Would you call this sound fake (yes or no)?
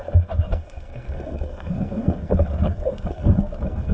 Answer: yes